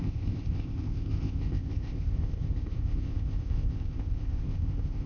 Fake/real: fake